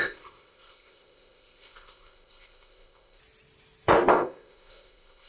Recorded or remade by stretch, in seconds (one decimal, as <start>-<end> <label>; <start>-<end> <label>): 0.0-3.2 remade; 3.2-4.1 recorded; 4.1-5.3 remade